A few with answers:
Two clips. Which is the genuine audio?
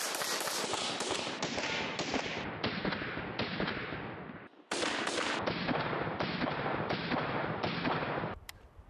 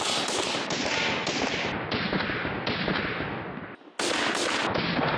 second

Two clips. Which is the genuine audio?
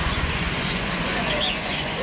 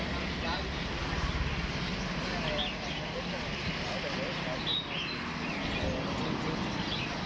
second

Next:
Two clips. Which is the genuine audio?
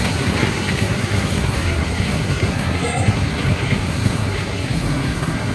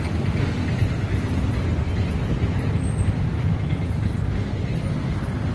second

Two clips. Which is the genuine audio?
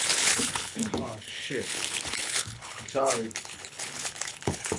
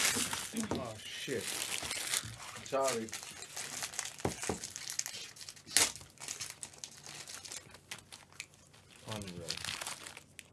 second